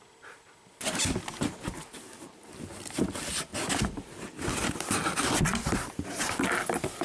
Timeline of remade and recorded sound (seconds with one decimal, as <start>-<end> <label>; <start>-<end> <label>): 0.0-7.0 recorded

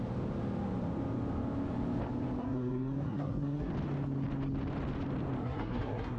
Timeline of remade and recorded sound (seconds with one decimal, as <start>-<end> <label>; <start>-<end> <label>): 0.0-2.4 recorded; 2.4-3.7 remade; 3.7-5.4 recorded; 5.4-6.2 remade

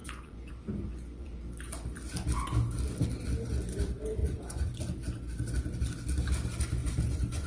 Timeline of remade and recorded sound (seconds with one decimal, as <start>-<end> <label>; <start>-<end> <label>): 0.0-0.5 remade; 0.5-0.9 recorded; 0.9-1.4 remade; 1.4-4.2 recorded; 4.2-4.8 remade; 4.8-6.8 recorded; 6.8-7.5 remade

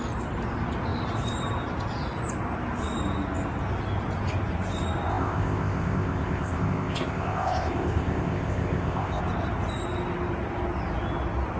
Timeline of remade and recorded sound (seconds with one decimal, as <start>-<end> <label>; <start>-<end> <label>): 0.0-5.1 recorded; 5.1-9.2 remade; 9.2-11.6 recorded